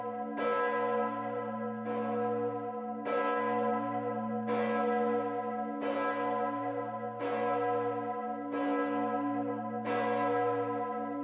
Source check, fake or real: real